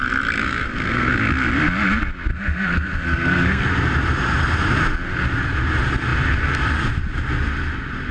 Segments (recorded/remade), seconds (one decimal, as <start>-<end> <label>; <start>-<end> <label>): 0.0-0.4 recorded; 0.4-1.1 remade; 1.1-2.3 recorded; 2.3-3.6 remade; 3.6-8.1 recorded